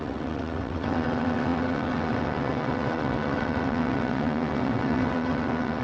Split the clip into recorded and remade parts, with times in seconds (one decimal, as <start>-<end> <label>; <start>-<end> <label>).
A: 0.0-5.8 remade